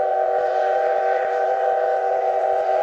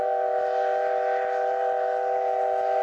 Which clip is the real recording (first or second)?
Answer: second